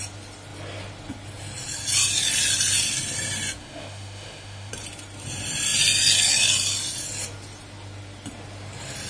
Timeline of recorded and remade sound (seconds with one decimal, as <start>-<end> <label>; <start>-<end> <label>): 0.0-3.6 recorded; 3.6-4.7 remade; 4.7-9.1 recorded